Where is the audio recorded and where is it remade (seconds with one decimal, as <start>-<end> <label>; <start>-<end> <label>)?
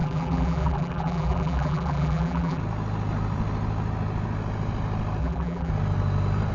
0.0-2.6 remade; 2.6-5.2 recorded; 5.2-5.7 remade; 5.7-6.5 recorded